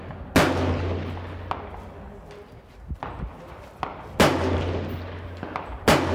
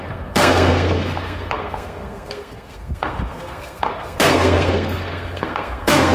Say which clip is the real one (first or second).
first